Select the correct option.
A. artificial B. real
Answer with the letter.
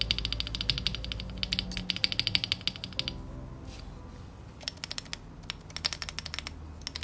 B